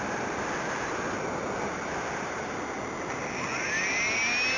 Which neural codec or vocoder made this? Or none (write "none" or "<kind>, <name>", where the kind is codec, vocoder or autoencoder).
none